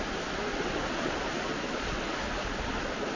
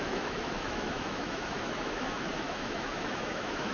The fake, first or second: second